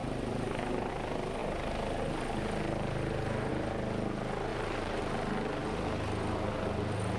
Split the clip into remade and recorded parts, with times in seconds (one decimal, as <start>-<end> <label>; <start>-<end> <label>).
0.0-0.9 remade; 0.9-4.5 recorded; 4.5-5.0 remade; 5.0-7.2 recorded